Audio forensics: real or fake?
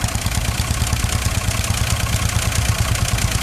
real